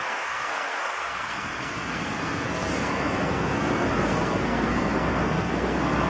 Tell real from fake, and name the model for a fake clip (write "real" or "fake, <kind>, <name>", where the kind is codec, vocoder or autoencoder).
fake, codec, SNAC